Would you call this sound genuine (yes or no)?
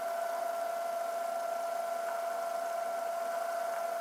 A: yes